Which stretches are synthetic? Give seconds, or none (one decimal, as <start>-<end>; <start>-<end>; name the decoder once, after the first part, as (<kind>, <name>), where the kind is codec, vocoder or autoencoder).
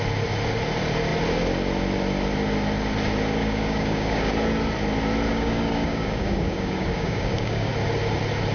3.4-4.3 (codec, DAC); 5.3-7.7